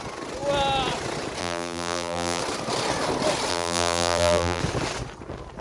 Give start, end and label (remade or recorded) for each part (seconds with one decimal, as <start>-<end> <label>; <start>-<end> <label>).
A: 0.0-1.4 recorded; 1.4-2.4 remade; 2.4-3.5 recorded; 3.5-4.6 remade; 4.6-5.6 recorded